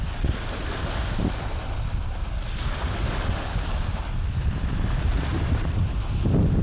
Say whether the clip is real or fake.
real